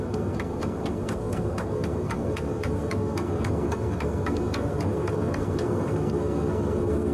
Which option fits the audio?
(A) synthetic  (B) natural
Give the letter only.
A